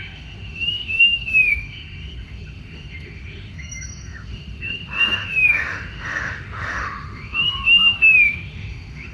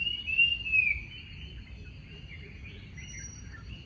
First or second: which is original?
second